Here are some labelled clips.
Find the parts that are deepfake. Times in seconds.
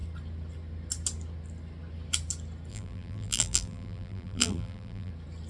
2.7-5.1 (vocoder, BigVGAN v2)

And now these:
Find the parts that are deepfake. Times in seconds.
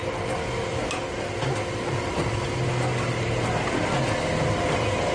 none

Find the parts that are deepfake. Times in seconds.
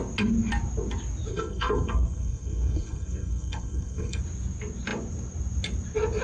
1.3-4.2 (codec, SNAC)